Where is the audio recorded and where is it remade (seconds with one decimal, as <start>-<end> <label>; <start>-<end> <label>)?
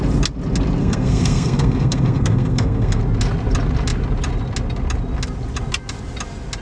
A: 0.0-0.8 recorded; 0.8-3.0 remade; 3.0-6.6 recorded